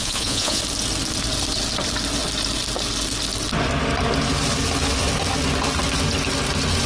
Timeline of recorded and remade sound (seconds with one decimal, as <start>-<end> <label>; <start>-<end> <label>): 0.0-0.6 remade; 0.6-6.9 recorded